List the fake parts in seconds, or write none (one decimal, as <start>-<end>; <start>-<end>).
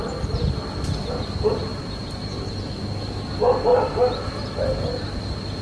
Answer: 1.7-2.5; 3.7-4.4